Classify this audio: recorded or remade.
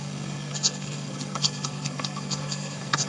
remade